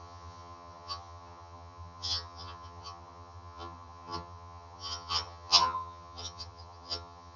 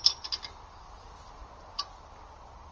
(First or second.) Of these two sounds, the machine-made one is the first